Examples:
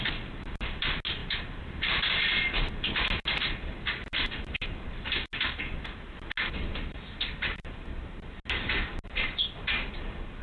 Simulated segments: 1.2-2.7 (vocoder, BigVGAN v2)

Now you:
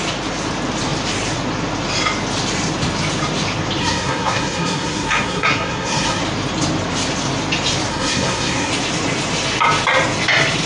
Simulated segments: 3.8-6.2 (codec, SNAC); 7.9-8.7